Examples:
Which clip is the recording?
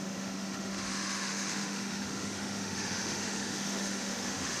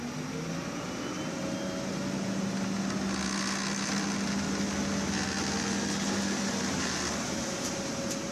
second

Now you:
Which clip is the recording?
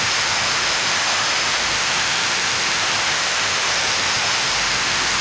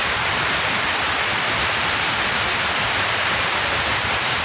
second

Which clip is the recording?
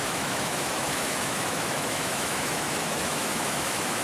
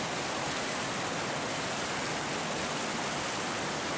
second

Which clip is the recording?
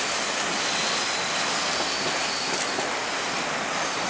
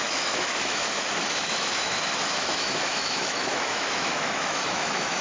first